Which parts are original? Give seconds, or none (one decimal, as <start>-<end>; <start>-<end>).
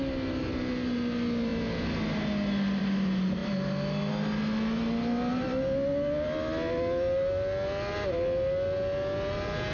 0.0-9.7